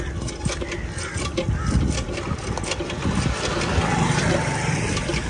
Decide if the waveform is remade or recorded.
recorded